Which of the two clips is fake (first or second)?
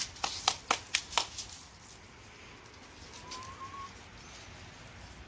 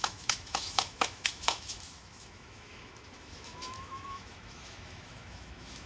second